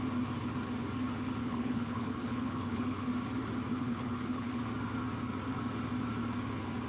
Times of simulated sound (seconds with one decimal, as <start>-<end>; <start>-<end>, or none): 1.4-3.1; 3.7-4.6